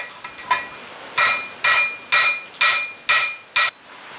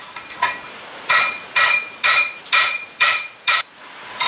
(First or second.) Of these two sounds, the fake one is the second